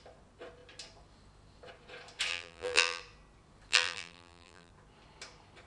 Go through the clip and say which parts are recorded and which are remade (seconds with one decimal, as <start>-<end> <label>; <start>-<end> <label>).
0.0-2.3 recorded; 2.3-3.0 remade; 3.0-3.7 recorded; 3.7-4.7 remade; 4.7-5.7 recorded

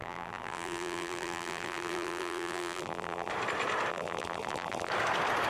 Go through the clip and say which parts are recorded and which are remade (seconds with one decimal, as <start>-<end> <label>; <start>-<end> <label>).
0.0-3.3 remade; 3.3-3.9 recorded; 3.9-4.9 remade; 4.9-5.5 recorded

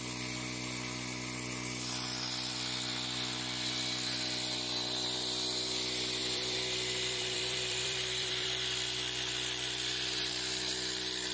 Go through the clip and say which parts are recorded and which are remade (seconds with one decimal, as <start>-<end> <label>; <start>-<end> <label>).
0.0-6.2 recorded; 6.2-10.3 remade; 10.3-11.3 recorded

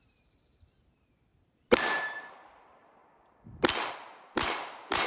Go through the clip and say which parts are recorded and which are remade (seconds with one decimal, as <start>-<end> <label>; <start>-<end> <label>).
0.0-3.0 remade; 3.0-4.2 recorded; 4.2-5.1 remade

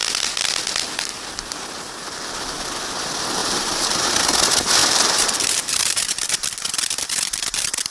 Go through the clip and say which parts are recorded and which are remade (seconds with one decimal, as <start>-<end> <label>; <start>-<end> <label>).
0.0-1.1 recorded; 1.1-2.3 remade; 2.3-3.4 recorded; 3.4-4.2 remade; 4.2-4.8 recorded; 4.8-6.4 remade; 6.4-7.9 recorded